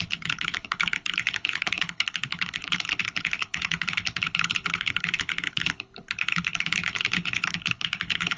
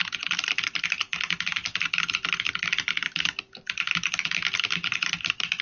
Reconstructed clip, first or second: first